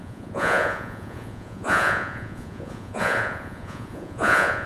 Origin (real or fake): fake